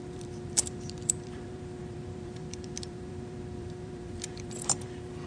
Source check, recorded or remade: remade